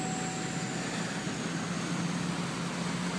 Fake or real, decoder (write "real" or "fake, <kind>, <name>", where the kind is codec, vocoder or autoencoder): real